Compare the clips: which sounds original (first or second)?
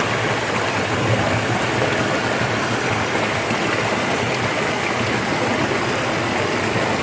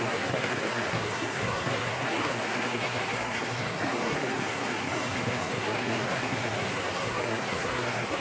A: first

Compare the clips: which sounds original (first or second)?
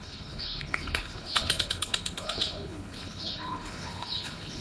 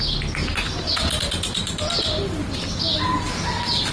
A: second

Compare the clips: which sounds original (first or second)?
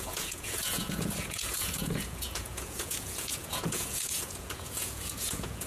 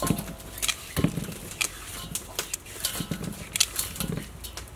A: second